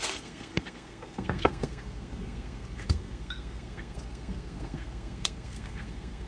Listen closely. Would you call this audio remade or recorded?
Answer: remade